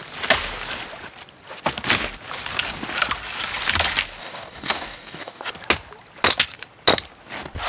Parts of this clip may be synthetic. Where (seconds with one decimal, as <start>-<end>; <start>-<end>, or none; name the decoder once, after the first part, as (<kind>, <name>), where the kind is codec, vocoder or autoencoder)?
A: 4.2-5.5 (codec, DAC)